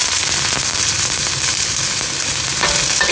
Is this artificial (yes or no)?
no